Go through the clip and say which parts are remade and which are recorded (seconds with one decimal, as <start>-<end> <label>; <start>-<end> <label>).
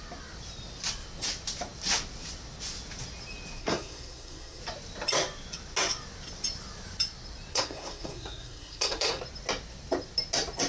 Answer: 0.0-3.6 recorded; 3.6-4.6 remade; 4.6-7.5 recorded; 7.5-9.2 remade; 9.2-10.7 recorded